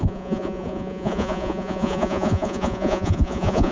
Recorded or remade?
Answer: remade